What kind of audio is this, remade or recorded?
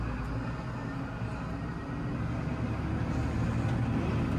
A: recorded